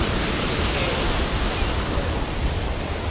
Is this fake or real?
real